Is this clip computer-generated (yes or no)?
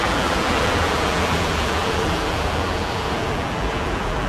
yes